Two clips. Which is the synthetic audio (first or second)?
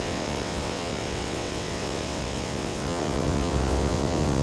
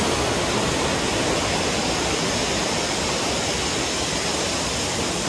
first